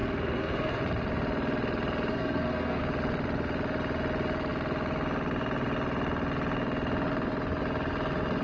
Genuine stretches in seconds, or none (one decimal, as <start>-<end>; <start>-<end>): 0.8-2.1; 2.8-8.4